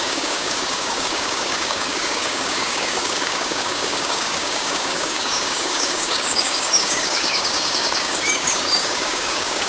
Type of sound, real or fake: fake